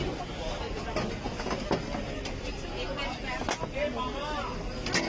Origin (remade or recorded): recorded